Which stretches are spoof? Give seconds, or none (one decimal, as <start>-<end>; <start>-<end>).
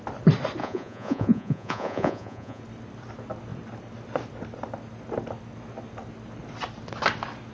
0.6-2.6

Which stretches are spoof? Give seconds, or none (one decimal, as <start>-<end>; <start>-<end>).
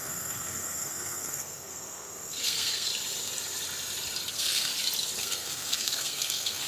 0.0-2.9; 4.3-4.7; 5.2-6.7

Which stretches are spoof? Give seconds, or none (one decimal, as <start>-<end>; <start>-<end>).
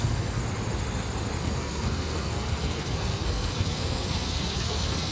0.0-0.4; 1.4-5.1